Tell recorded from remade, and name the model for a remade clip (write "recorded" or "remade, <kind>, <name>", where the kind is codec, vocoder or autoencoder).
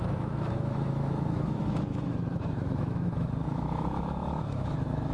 remade, autoencoder, DAC-VAE